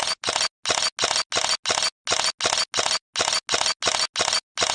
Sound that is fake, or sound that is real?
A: real